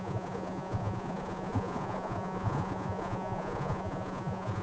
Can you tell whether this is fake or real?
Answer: fake